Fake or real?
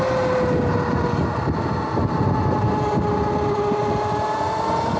real